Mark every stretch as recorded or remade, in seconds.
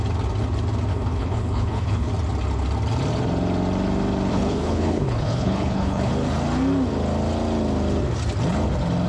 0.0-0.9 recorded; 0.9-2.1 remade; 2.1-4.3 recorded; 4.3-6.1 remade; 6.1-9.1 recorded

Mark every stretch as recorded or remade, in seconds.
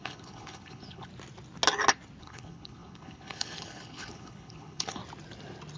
0.0-1.1 remade; 1.1-2.2 recorded; 2.2-5.0 remade; 5.0-5.8 recorded